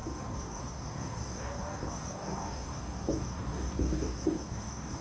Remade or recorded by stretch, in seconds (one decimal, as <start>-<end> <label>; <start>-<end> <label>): 0.0-5.0 remade